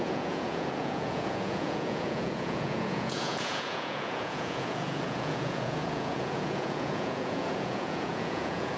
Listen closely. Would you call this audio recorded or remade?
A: remade